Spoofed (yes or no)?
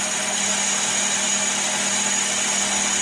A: no